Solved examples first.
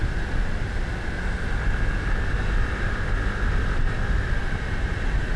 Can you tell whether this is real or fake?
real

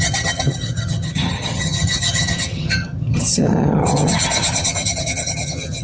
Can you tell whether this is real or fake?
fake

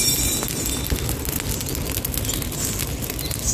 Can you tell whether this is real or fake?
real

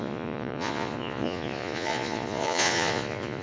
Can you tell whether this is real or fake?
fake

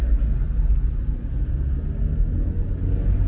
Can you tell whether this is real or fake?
real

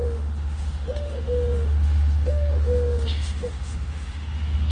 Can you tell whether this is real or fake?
fake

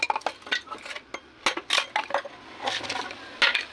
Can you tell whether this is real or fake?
real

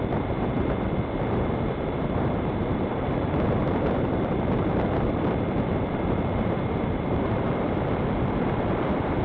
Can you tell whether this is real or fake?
fake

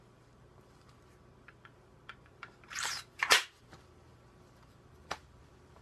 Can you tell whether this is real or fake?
fake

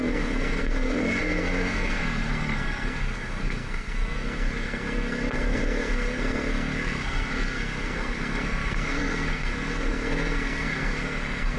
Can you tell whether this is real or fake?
fake